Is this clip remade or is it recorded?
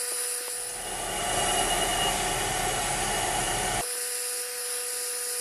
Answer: recorded